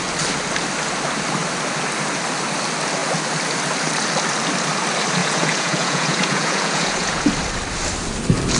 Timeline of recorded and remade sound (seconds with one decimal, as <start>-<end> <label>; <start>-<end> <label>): 0.0-5.2 recorded; 5.2-7.3 remade; 7.3-8.6 recorded

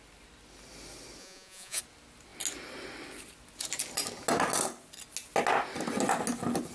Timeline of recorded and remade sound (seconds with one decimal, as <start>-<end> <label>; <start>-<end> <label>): 0.0-1.2 recorded; 1.2-1.8 remade; 1.8-6.7 recorded

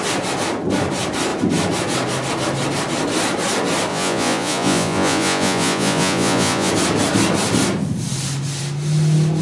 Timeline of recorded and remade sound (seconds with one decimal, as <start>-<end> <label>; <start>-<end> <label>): 0.0-3.9 recorded; 3.9-6.7 remade; 6.7-9.4 recorded

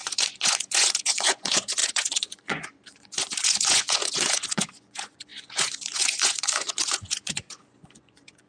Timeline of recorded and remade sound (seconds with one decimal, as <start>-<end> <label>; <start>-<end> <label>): 0.0-8.5 remade